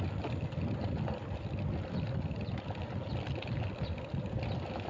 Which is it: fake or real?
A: real